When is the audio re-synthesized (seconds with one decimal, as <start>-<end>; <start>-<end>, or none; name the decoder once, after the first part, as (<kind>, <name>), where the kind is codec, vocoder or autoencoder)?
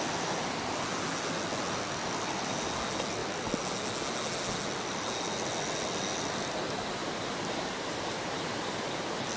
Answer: 7.0-8.7 (vocoder, BigVGAN v2)